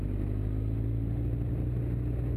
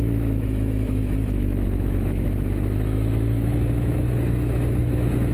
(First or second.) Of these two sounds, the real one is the first